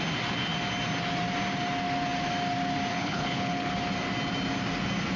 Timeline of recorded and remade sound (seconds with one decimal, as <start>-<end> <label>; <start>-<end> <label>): 0.0-2.9 recorded; 2.9-3.7 remade; 3.7-5.2 recorded